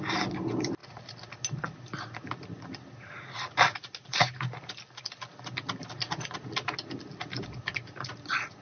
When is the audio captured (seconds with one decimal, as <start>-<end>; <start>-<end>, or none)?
0.0-8.6